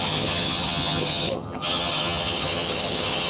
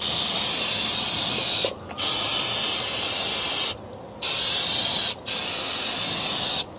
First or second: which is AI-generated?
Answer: first